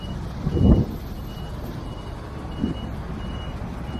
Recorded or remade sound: recorded